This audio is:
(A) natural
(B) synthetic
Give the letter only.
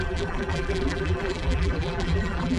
B